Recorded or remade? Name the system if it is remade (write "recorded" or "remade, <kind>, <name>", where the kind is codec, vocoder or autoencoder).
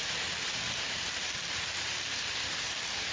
recorded